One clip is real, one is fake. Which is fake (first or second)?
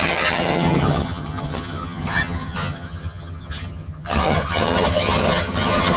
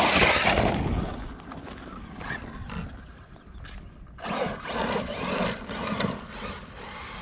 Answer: first